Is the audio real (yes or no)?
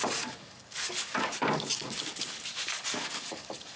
no